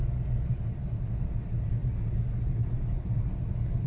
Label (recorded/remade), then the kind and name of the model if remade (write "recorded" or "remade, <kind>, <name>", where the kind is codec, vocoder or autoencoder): recorded